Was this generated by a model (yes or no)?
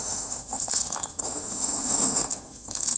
yes